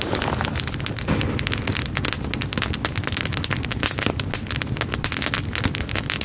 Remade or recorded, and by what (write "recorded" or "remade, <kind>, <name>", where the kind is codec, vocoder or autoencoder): recorded